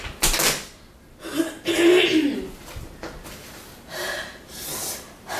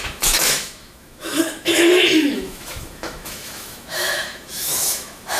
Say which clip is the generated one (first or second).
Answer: second